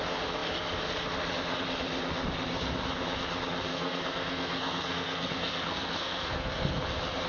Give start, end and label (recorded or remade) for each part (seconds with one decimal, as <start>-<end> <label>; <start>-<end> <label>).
0.0-3.7 recorded; 3.7-6.8 remade; 6.8-7.3 recorded